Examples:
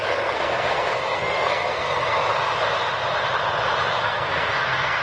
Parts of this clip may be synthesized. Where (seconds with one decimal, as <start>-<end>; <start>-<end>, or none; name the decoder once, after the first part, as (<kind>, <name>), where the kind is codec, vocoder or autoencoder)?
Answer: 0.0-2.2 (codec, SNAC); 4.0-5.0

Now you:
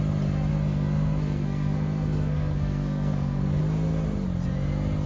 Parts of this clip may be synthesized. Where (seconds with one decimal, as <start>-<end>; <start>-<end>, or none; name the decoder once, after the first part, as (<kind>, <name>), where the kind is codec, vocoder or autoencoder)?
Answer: 0.5-3.6 (codec, SNAC)

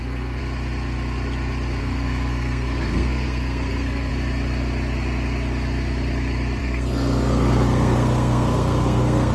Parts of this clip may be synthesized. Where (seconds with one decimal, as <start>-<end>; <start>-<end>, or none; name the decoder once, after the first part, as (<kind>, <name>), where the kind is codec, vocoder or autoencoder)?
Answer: 0.0-0.4 (codec, SNAC); 1.8-4.1; 6.6-9.3